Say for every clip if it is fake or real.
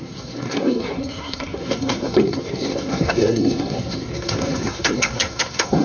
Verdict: fake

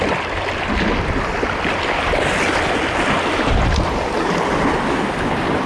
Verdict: real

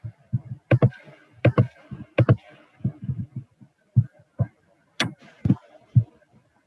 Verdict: real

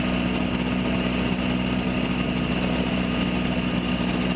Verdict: real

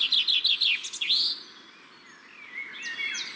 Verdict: real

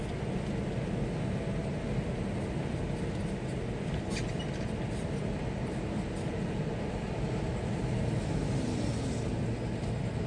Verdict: real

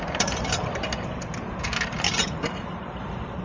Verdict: real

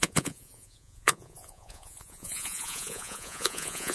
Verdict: fake